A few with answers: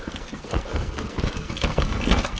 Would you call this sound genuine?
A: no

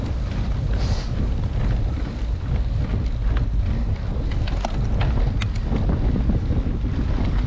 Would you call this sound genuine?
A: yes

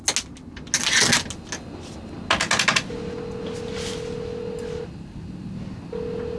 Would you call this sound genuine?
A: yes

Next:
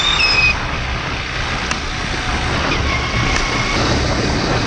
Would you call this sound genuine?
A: yes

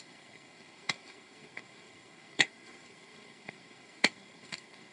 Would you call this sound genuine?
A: no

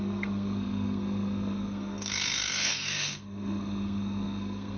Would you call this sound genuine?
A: no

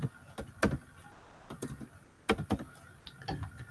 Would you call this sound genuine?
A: yes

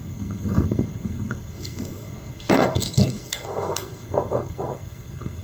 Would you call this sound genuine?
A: no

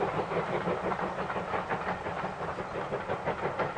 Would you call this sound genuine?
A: yes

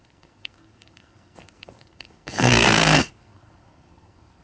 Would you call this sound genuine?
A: no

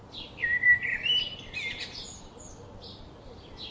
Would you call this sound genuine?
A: yes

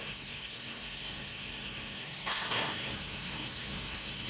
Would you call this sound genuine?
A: no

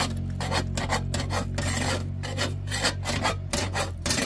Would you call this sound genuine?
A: yes